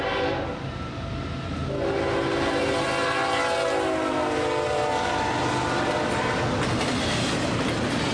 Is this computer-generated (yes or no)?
no